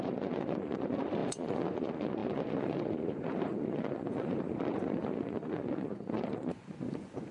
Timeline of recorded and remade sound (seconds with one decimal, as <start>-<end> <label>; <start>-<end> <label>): 0.0-7.3 remade